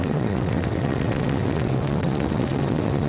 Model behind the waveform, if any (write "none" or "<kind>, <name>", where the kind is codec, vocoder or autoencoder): vocoder, WaveNeXt